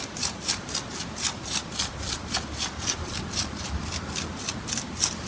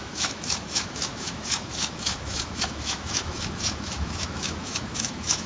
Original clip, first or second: first